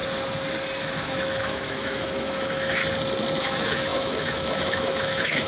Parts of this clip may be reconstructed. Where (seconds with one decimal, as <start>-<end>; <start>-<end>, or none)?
0.8-2.8; 3.4-5.5